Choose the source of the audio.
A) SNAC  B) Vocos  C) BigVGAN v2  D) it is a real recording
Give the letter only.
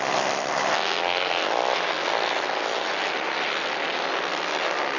D